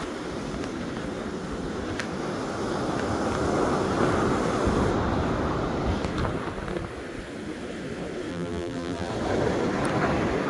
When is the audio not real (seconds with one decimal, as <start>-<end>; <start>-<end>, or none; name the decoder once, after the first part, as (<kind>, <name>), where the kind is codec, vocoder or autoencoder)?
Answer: 8.3-9.1 (vocoder, BigVGAN v2)